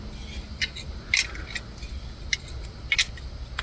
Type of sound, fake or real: real